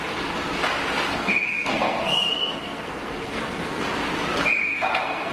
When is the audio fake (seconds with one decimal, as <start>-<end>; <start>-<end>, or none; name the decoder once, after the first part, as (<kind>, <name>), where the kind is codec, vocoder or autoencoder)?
1.1-3.8 (codec, SNAC); 4.6-5.3